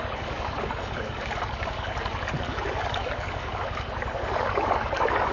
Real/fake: fake